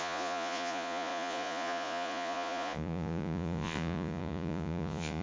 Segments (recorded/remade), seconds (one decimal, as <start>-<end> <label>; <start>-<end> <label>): 0.0-5.2 remade